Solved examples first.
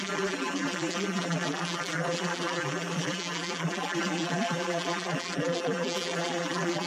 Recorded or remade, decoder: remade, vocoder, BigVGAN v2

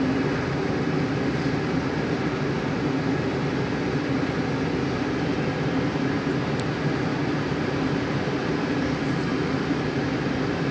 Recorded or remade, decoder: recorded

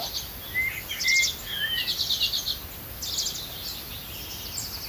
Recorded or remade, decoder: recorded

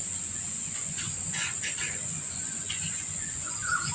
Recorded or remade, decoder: remade, vocoder, Vocos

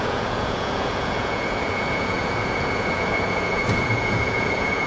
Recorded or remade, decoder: remade, vocoder, Vocos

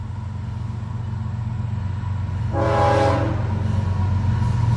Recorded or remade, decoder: recorded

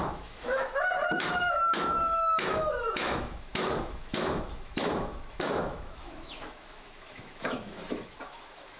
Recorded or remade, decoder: remade, autoencoder, DAC-VAE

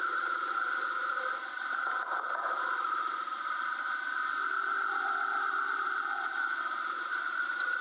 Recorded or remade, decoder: recorded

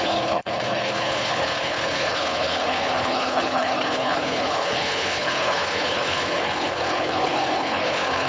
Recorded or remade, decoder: remade, codec, HILCodec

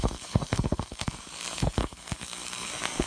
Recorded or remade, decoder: remade, codec, SNAC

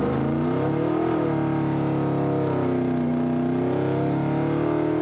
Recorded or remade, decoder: recorded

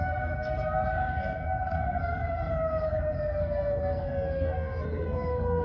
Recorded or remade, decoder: remade, codec, SNAC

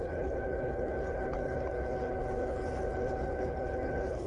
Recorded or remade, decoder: remade, codec, HILCodec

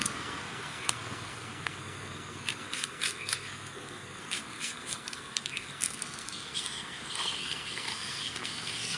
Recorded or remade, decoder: remade, codec, SNAC